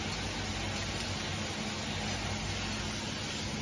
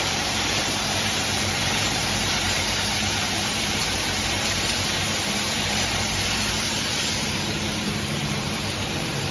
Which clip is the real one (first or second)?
first